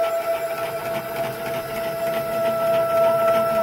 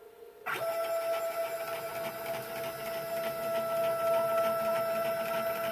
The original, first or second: second